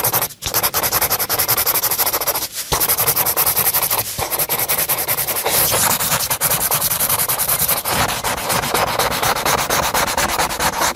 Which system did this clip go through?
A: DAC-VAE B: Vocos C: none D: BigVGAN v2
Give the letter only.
D